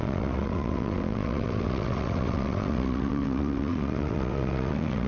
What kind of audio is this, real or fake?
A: fake